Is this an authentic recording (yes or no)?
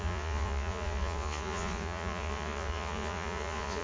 no